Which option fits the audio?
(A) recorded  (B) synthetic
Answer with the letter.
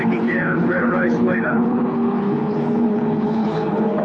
B